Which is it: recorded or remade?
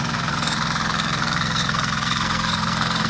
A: remade